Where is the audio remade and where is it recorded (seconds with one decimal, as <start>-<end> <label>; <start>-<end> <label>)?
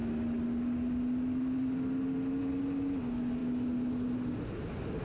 0.0-5.0 recorded